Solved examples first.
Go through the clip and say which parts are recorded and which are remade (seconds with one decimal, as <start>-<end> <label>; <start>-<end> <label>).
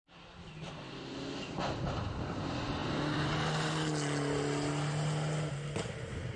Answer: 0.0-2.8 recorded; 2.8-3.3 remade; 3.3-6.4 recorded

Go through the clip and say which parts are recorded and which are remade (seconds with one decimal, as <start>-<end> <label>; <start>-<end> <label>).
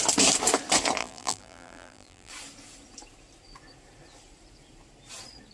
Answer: 0.0-1.0 recorded; 1.0-2.3 remade; 2.3-5.5 recorded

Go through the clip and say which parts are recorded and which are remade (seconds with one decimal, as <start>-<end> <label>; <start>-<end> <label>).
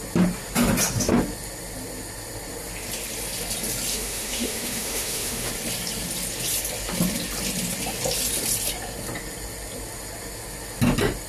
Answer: 0.0-3.9 recorded; 3.9-5.5 remade; 5.5-11.3 recorded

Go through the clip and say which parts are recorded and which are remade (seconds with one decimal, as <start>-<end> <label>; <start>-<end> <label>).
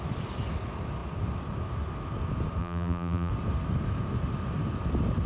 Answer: 0.0-2.6 recorded; 2.6-3.3 remade; 3.3-5.3 recorded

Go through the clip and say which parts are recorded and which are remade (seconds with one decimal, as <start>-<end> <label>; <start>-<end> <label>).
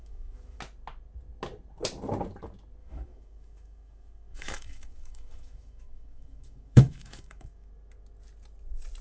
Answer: 0.0-0.6 remade; 0.6-2.8 recorded; 2.8-7.7 remade; 7.7-9.0 recorded